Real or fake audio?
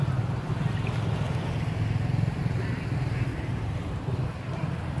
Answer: real